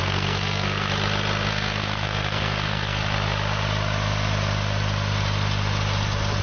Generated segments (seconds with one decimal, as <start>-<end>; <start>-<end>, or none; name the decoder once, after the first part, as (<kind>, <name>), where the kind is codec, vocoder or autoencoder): 0.0-0.9 (codec, SNAC); 1.5-3.0